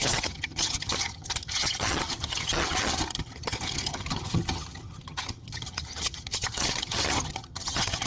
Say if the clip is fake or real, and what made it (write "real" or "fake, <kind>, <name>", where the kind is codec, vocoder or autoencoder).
fake, vocoder, HiFi-GAN